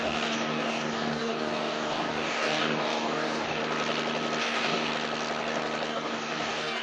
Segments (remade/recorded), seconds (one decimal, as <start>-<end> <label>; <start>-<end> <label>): 0.0-3.6 remade; 3.6-4.4 recorded; 4.4-4.9 remade; 4.9-5.9 recorded; 5.9-6.8 remade